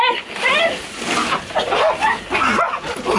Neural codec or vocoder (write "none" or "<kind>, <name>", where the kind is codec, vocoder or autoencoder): none